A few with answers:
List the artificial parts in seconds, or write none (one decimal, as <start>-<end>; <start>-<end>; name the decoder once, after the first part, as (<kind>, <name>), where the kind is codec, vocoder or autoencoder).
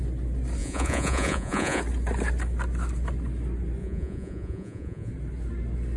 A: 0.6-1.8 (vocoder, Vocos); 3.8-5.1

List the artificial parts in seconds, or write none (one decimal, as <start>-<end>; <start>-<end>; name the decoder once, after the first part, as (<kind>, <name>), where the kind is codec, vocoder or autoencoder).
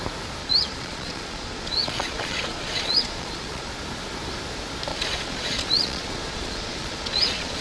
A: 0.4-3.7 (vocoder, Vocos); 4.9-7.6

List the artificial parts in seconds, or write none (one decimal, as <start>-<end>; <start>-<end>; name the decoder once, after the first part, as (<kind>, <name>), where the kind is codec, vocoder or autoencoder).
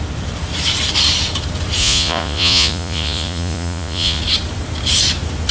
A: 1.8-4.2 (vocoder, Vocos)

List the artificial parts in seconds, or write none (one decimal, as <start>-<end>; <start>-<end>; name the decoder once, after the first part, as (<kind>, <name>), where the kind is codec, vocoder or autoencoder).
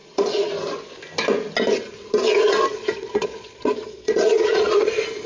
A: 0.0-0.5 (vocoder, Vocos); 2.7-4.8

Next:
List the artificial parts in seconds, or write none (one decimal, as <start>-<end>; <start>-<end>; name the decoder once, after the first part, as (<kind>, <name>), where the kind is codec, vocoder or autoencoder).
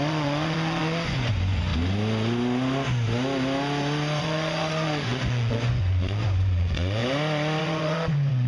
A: 0.0-1.7 (vocoder, Vocos); 4.2-7.0; 7.6-8.5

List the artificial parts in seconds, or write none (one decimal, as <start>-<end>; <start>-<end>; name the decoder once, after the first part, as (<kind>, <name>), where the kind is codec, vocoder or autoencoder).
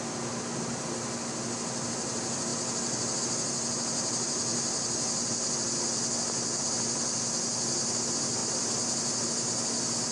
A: none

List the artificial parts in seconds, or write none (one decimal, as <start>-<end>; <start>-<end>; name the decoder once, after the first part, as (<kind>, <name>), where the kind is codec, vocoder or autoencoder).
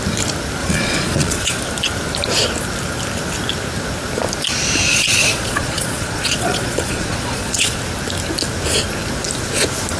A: 0.6-1.6 (vocoder, Vocos); 4.9-7.8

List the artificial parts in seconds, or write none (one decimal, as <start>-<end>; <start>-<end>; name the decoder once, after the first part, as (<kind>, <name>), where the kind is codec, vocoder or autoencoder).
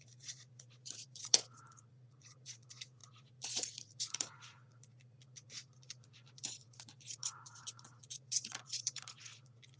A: 0.0-9.8 (vocoder, Vocos)